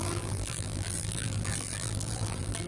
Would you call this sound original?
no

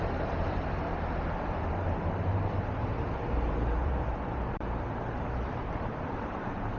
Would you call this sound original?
no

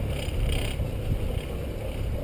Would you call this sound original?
no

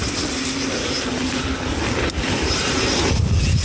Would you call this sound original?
yes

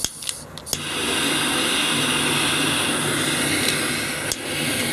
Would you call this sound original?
yes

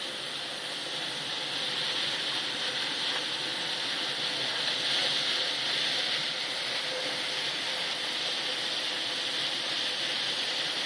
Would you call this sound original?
no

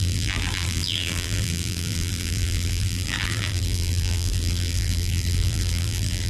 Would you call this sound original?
no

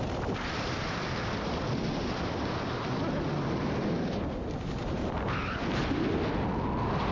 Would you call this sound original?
yes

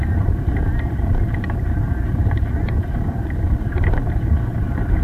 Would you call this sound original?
no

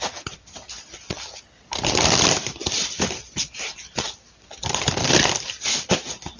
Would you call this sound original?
no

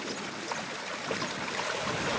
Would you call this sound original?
yes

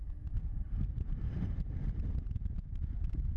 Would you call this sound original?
no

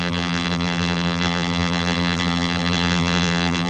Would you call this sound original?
no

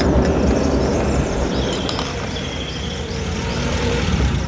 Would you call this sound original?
no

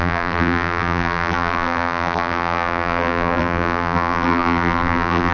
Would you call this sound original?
no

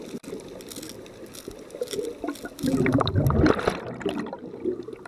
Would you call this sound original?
yes